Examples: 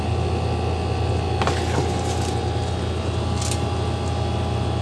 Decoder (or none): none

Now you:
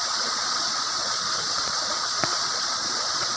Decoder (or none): vocoder, Vocos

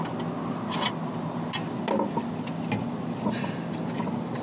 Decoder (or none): none